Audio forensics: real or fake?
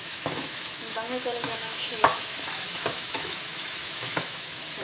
fake